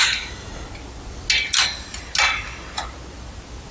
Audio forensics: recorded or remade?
recorded